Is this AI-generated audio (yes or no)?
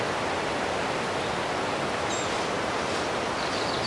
no